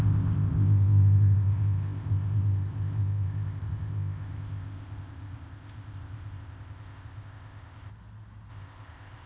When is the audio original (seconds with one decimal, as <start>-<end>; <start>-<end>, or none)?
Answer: 7.9-8.5